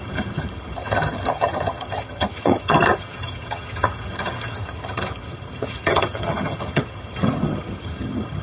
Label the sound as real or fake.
fake